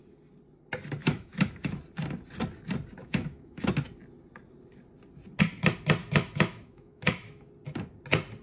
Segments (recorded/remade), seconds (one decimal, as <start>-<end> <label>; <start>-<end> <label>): 0.0-1.0 recorded; 1.0-1.8 remade; 1.8-3.0 recorded; 3.0-3.7 remade; 3.7-6.0 recorded; 6.0-7.5 remade; 7.5-8.4 recorded